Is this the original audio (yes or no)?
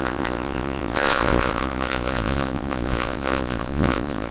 no